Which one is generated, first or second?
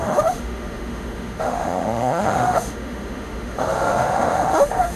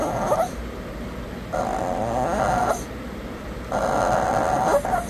first